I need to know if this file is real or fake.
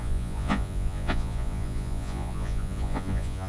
fake